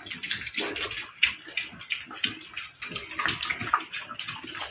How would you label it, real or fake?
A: real